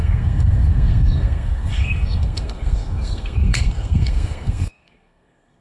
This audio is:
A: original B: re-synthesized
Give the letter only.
B